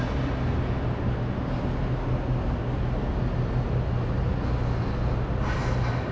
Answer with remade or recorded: recorded